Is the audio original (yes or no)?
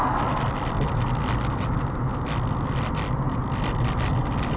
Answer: yes